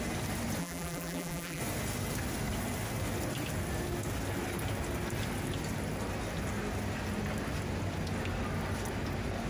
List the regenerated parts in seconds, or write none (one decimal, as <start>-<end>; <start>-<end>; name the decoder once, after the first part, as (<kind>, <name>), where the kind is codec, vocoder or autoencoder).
0.6-1.6 (vocoder, BigVGAN v2)